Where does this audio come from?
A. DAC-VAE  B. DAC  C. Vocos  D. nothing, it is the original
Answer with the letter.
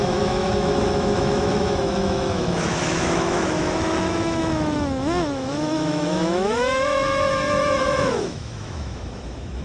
A